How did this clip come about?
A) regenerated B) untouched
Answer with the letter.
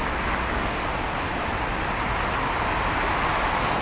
B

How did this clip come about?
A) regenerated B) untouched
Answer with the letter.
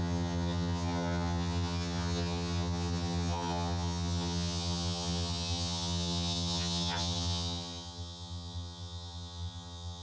A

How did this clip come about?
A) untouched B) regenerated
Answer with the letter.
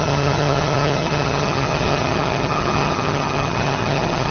B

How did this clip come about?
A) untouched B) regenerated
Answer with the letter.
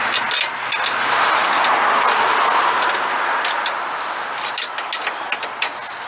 A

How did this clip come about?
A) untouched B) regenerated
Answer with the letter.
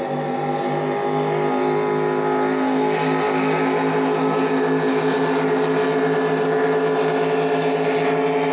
A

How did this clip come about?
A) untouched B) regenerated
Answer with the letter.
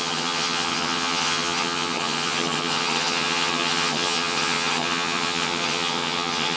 B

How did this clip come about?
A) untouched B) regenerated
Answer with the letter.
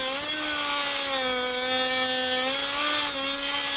A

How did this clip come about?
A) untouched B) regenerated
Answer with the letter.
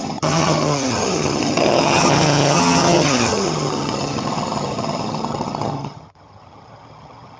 B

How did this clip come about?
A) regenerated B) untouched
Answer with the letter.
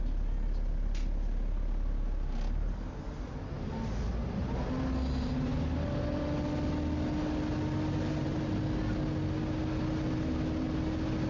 B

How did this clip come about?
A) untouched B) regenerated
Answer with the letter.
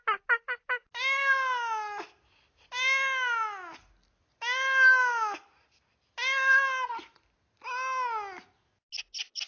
A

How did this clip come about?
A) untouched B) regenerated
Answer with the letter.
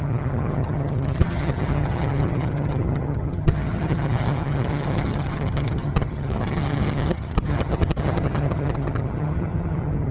B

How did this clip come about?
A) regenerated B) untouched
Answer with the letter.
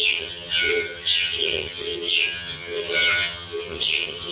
A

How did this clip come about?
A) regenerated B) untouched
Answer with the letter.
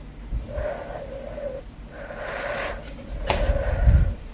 B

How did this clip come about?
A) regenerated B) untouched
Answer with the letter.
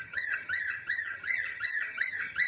A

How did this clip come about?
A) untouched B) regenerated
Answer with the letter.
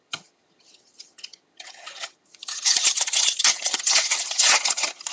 B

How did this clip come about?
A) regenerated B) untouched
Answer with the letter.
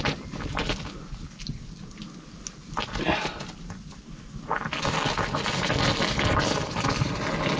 B